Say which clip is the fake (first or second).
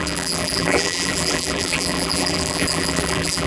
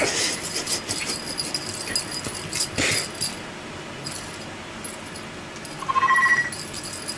first